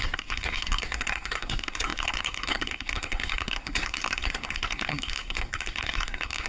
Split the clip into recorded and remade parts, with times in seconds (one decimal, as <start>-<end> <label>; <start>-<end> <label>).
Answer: 0.0-6.5 remade